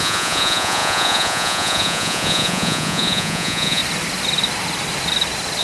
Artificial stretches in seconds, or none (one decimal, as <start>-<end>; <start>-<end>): 0.0-3.8